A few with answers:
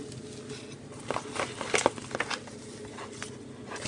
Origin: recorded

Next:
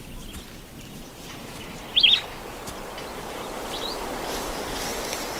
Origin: recorded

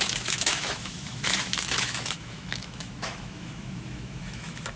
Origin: remade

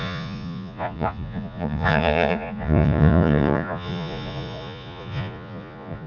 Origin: remade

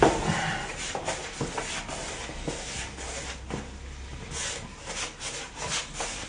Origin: recorded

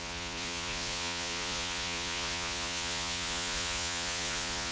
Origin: remade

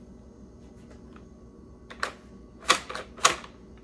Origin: recorded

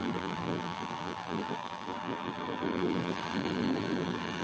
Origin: remade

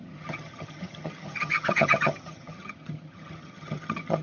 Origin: remade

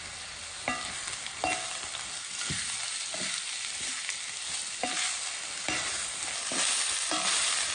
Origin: recorded